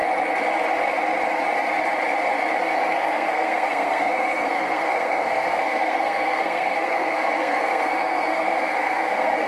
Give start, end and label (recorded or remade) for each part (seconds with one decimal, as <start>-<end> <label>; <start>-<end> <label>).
0.0-2.9 recorded; 2.9-9.5 remade